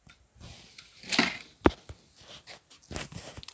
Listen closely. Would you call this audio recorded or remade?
recorded